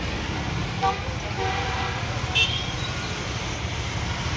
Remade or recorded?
recorded